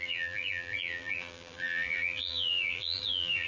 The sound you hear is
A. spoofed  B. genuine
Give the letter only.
A